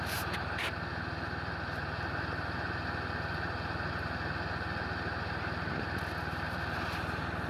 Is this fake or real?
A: real